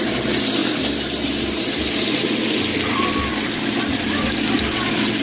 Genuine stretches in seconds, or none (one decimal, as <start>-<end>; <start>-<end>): 0.0-5.2